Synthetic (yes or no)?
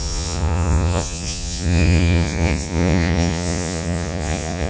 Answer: yes